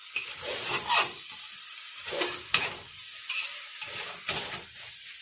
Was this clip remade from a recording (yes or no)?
no